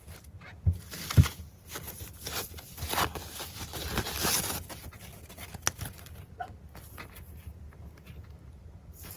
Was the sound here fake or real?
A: real